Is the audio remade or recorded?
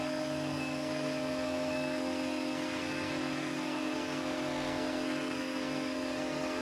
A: remade